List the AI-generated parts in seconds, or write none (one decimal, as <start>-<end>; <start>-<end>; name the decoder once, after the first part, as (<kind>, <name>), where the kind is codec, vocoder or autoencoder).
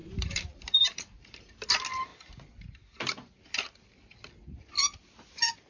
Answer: 0.0-1.7 (vocoder, BigVGAN v2)